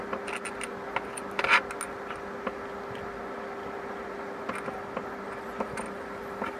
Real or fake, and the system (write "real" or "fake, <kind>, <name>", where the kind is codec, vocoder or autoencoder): real